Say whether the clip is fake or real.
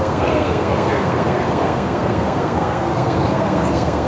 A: fake